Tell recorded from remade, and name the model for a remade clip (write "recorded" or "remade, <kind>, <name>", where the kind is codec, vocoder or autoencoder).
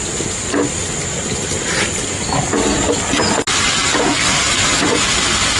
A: recorded